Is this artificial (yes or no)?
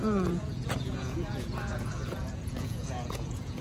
yes